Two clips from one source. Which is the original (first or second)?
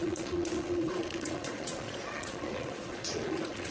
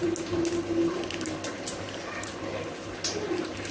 second